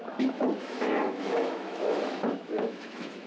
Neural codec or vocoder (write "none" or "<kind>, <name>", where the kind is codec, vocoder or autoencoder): autoencoder, DAC-VAE